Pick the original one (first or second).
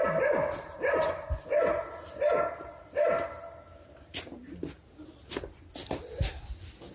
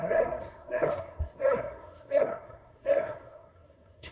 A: first